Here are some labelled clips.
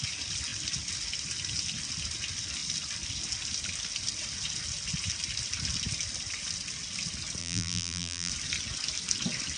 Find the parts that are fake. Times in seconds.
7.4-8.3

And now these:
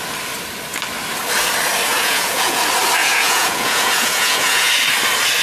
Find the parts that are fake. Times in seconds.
1.9-2.6; 3.0-4.7

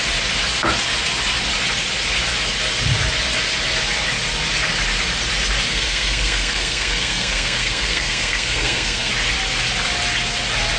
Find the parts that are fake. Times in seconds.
5.7-9.1

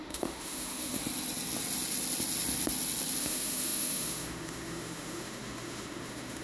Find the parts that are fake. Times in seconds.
0.0-1.0; 3.2-6.4